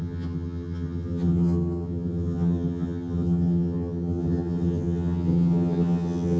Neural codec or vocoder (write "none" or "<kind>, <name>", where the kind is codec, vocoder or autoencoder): vocoder, HiFi-GAN